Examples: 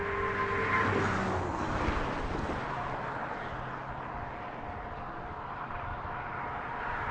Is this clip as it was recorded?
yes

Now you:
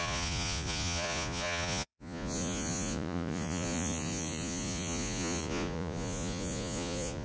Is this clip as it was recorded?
no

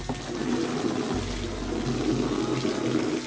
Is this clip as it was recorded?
yes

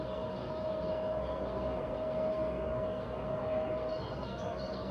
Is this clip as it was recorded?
no